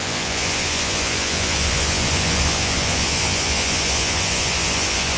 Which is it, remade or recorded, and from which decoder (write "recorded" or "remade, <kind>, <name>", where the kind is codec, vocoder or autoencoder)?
remade, vocoder, Vocos